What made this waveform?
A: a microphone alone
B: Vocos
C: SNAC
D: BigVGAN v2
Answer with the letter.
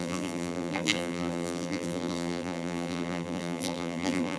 D